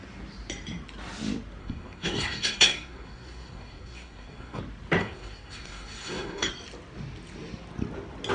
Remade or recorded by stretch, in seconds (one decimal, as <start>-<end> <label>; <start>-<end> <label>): 0.0-1.6 recorded; 1.6-4.6 remade; 4.6-5.0 recorded; 5.0-6.5 remade; 6.5-8.3 recorded